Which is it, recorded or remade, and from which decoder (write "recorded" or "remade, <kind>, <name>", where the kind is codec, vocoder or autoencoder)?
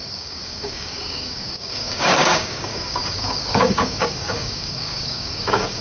remade, codec, DAC